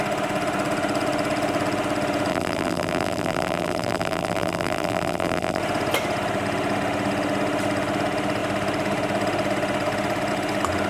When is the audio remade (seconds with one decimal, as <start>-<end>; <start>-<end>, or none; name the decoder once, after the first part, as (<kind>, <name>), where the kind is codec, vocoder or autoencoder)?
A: 2.3-5.6 (vocoder, BigVGAN v2)